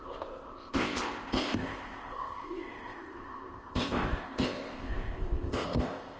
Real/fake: fake